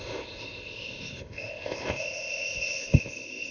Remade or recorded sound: remade